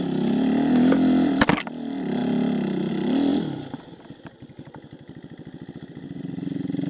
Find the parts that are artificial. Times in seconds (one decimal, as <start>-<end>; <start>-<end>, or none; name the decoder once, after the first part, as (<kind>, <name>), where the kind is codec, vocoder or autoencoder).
none